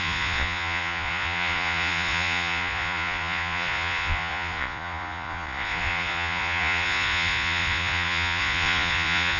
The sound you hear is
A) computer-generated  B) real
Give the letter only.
A